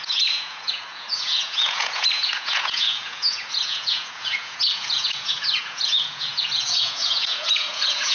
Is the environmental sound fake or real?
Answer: fake